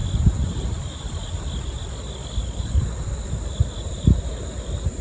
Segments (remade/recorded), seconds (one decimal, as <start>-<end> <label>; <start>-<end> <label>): 0.0-2.7 recorded; 2.7-5.0 remade